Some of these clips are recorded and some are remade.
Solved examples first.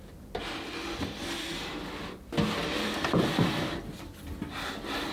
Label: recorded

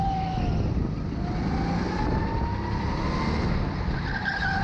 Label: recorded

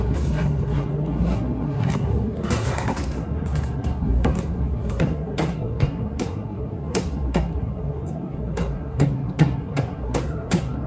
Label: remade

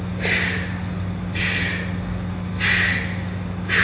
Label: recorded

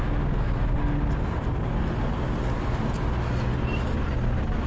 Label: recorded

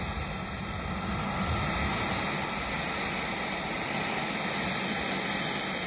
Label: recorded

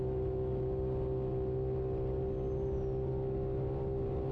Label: recorded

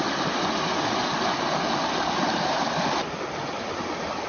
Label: recorded